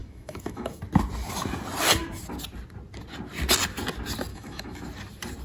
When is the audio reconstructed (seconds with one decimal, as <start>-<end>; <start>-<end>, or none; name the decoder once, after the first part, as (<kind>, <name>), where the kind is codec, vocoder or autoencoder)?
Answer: 0.0-0.8 (autoencoder, DAC-VAE); 4.3-4.8